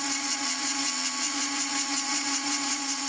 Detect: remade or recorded remade